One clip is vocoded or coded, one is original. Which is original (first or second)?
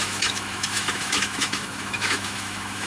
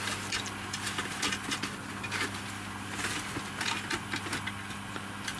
second